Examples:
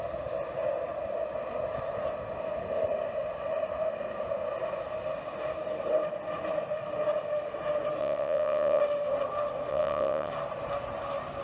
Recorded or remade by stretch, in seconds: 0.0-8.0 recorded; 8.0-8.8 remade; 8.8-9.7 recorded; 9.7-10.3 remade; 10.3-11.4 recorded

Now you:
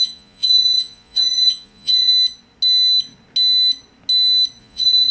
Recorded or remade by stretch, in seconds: 0.0-2.1 remade; 2.1-4.6 recorded; 4.6-5.1 remade

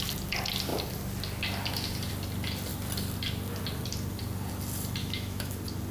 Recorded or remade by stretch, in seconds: 0.0-5.0 recorded; 5.0-5.5 remade; 5.5-5.9 recorded

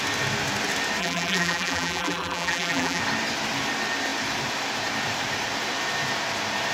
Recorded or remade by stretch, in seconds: 0.0-1.0 recorded; 1.0-3.0 remade; 3.0-6.7 recorded